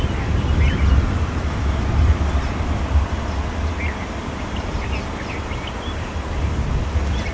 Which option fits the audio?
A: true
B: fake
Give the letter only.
A